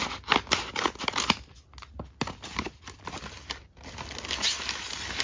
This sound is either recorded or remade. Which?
recorded